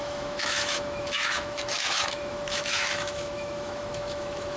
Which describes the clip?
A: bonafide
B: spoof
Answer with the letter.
B